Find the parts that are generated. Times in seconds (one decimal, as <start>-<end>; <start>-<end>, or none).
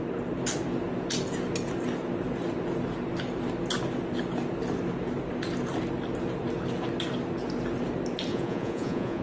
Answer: 8.3-9.2